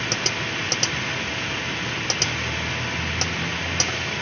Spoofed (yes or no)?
no